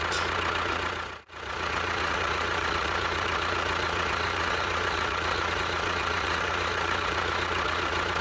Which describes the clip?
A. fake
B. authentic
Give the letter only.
A